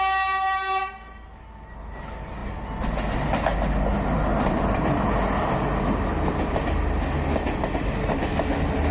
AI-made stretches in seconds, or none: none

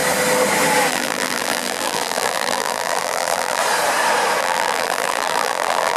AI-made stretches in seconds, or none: 0.9-3.6; 4.4-6.0